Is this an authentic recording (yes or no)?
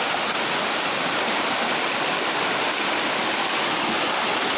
yes